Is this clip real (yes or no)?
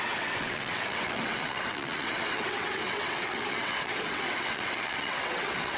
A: no